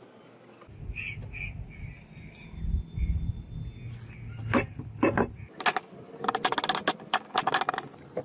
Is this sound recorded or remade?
recorded